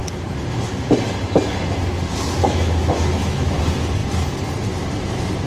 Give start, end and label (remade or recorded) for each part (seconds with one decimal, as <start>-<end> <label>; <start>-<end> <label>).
0.0-2.4 recorded; 2.4-3.6 remade; 3.6-5.5 recorded